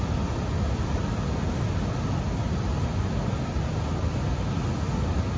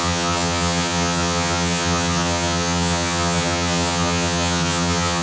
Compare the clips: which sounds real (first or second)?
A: first